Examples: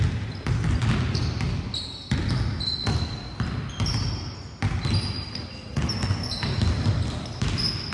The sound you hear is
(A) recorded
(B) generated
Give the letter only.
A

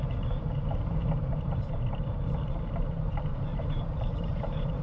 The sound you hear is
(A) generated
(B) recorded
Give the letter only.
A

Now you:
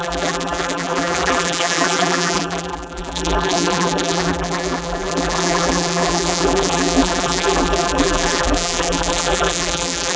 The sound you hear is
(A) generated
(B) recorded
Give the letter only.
A